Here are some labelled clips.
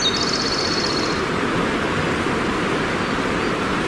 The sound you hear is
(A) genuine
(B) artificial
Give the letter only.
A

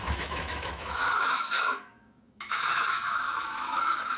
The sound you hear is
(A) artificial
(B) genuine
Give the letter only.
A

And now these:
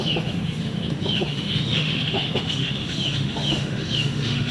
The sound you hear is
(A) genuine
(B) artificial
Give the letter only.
B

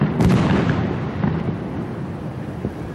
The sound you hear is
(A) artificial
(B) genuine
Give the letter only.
B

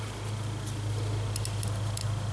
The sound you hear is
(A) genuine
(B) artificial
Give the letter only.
A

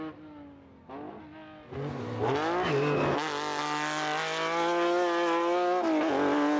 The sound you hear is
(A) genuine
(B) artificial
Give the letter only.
A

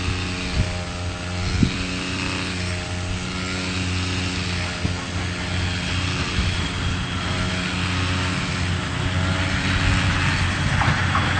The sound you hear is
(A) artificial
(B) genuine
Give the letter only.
B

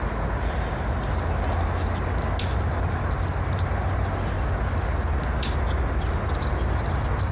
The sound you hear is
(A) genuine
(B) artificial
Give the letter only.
A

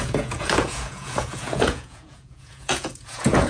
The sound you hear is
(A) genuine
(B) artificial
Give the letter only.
B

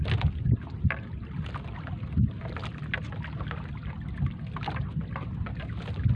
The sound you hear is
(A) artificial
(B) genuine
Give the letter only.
B